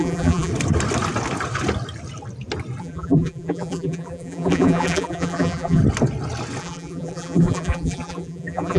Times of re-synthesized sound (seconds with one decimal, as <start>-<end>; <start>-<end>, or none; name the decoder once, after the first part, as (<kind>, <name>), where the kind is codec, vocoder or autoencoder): 0.0-0.5 (vocoder, BigVGAN v2); 2.8-5.8; 6.6-8.8